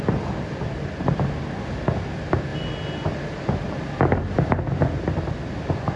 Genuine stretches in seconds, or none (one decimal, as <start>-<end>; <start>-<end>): 0.0-6.0